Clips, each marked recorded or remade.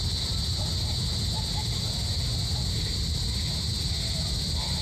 recorded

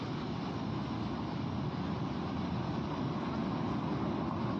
recorded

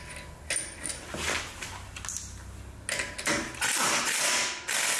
recorded